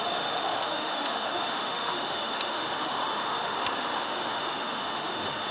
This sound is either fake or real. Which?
fake